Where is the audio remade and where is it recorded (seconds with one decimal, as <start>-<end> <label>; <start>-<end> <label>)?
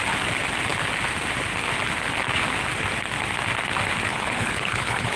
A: 0.0-4.1 recorded; 4.1-5.2 remade